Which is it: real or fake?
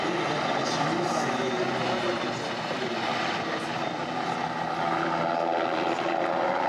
real